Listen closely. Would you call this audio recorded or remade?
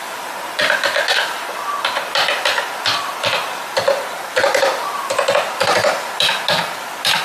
remade